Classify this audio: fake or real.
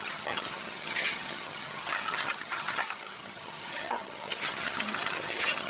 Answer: fake